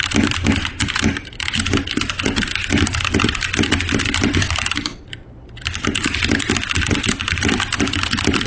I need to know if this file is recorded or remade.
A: remade